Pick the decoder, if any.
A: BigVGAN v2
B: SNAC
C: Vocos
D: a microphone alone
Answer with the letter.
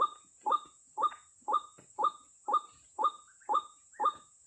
C